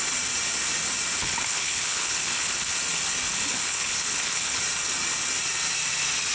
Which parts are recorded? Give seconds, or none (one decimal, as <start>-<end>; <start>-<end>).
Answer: 0.0-1.2; 2.7-3.3; 4.6-6.3